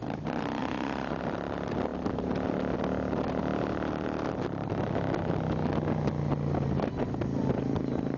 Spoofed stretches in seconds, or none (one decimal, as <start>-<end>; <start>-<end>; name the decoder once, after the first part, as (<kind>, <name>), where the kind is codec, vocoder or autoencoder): 0.6-1.2 (vocoder, Vocos)